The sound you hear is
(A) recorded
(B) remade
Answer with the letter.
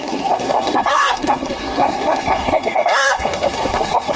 B